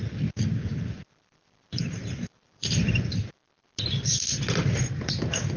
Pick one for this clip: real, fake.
fake